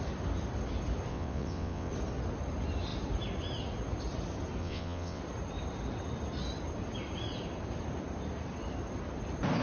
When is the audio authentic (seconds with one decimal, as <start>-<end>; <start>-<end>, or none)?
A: 0.0-1.1; 1.9-4.6; 5.2-9.6